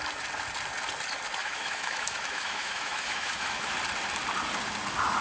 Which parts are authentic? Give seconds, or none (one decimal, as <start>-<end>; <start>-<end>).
0.0-1.4; 3.7-5.2